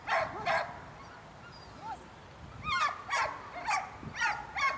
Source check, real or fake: real